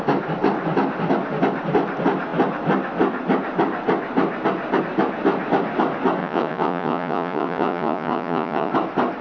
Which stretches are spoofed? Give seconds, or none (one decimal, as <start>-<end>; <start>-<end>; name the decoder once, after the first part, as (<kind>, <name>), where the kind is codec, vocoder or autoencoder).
6.2-8.7 (vocoder, Vocos)